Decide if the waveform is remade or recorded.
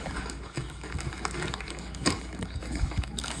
remade